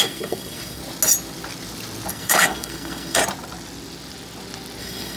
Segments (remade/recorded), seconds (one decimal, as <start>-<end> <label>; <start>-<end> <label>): 0.0-0.8 remade; 0.8-2.1 recorded; 2.1-3.2 remade; 3.2-4.8 recorded; 4.8-5.2 remade